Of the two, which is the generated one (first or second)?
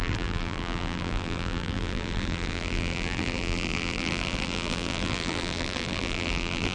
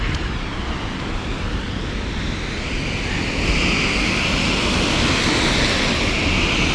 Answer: first